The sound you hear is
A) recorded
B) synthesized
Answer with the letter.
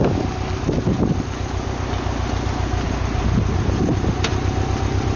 A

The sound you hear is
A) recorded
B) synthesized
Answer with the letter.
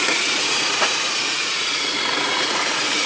B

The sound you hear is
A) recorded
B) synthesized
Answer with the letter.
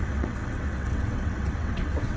B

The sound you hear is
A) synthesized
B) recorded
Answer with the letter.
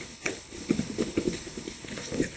A